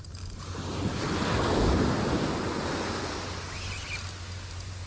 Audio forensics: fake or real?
real